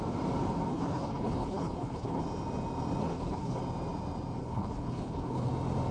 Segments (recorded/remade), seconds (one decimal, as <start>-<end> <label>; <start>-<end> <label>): 0.0-0.7 recorded; 0.7-2.2 remade; 2.2-3.0 recorded; 3.0-3.6 remade; 3.6-4.4 recorded; 4.4-5.5 remade; 5.5-5.9 recorded